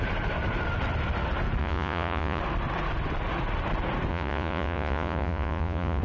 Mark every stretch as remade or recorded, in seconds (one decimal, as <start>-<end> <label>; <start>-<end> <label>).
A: 0.0-1.6 recorded; 1.6-2.4 remade; 2.4-4.1 recorded; 4.1-6.0 remade